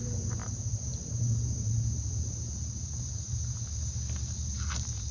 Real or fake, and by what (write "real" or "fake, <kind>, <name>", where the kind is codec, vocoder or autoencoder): fake, vocoder, BigVGAN v2